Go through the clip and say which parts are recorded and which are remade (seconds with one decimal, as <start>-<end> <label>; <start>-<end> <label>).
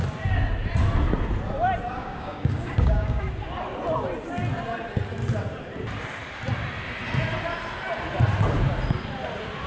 0.0-2.0 recorded; 2.0-3.2 remade; 3.2-9.7 recorded